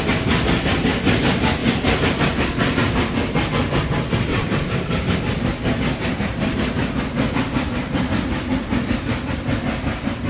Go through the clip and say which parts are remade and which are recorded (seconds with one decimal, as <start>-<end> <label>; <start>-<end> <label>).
0.0-4.3 recorded; 4.3-5.2 remade; 5.2-10.3 recorded